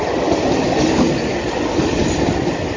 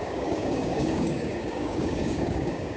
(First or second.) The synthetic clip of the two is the second